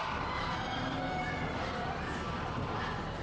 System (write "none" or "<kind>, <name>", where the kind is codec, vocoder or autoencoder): none